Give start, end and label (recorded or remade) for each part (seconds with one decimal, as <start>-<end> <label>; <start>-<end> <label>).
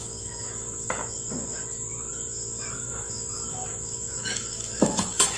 0.0-1.0 remade; 1.0-2.7 recorded; 2.7-5.4 remade